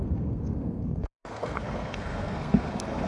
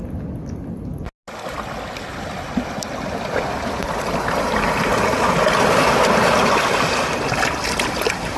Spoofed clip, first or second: first